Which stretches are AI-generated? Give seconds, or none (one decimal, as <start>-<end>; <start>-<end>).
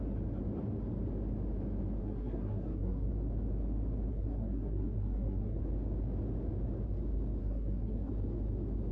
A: 2.0-3.1; 4.1-5.6; 7.4-8.1